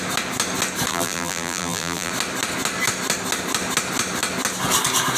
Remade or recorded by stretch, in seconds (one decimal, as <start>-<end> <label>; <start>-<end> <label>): 0.0-0.9 recorded; 0.9-2.1 remade; 2.1-5.2 recorded